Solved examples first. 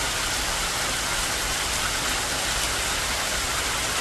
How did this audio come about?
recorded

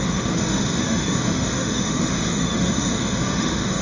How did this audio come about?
remade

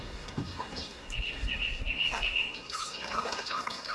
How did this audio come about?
remade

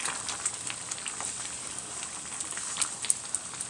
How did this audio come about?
recorded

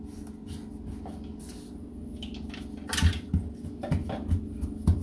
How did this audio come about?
recorded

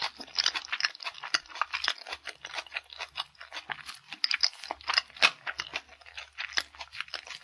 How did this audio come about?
recorded